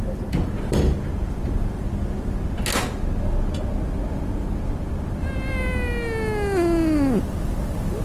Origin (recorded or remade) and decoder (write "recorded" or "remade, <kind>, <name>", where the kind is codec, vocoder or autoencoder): recorded